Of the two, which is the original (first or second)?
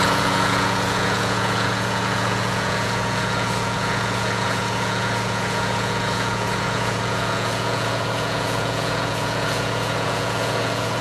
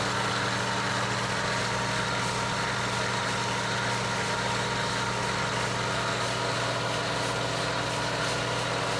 second